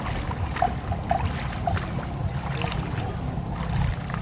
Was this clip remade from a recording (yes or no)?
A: no